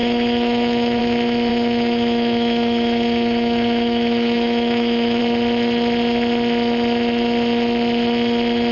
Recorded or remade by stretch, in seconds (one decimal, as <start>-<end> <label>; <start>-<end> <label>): 0.0-1.0 remade; 1.0-1.5 recorded; 1.5-5.2 remade; 5.2-8.7 recorded